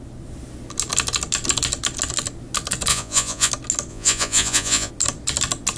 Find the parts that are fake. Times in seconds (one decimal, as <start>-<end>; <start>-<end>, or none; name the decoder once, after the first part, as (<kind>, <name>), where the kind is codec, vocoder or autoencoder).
2.9-3.5 (vocoder, Vocos); 3.9-4.9